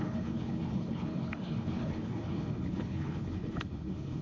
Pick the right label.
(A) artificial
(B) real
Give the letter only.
A